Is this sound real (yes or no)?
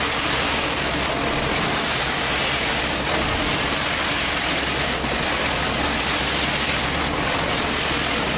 yes